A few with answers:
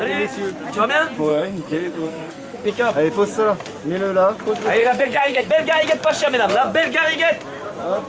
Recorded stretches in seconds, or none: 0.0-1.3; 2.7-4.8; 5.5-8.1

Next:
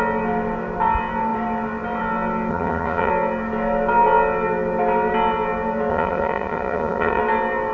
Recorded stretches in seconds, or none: 0.0-2.5; 3.1-5.9; 7.2-7.7